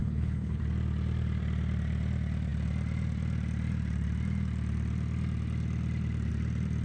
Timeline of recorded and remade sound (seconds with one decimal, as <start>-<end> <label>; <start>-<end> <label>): 0.0-0.6 remade; 0.6-6.8 recorded